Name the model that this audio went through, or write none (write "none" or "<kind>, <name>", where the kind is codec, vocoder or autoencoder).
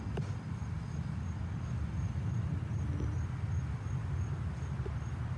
none